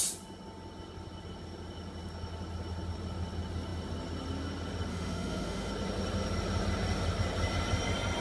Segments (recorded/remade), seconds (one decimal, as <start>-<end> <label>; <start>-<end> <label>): 0.0-4.9 recorded; 4.9-5.7 remade; 5.7-8.2 recorded